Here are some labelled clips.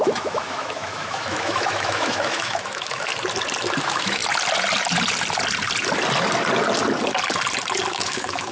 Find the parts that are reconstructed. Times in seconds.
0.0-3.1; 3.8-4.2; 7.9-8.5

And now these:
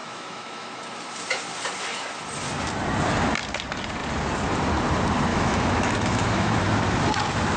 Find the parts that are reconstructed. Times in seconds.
0.0-0.8; 5.3-6.6

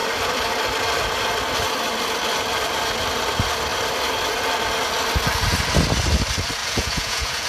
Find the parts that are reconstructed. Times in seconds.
6.6-7.5

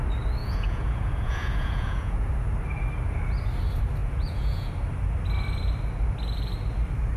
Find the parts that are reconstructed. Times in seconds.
0.4-2.3; 4.0-4.7